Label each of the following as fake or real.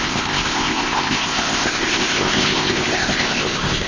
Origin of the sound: fake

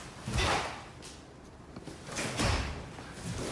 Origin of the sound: real